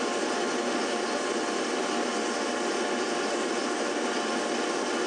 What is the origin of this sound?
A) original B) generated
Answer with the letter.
A